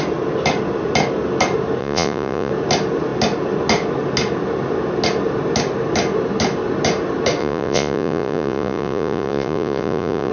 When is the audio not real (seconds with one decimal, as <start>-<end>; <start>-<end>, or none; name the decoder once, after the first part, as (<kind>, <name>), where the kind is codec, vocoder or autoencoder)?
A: 1.8-2.5 (vocoder, Vocos); 7.4-10.3